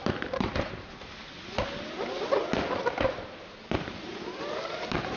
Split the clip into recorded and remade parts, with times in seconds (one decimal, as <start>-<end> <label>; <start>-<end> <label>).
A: 0.0-1.2 remade; 1.2-3.4 recorded; 3.4-5.2 remade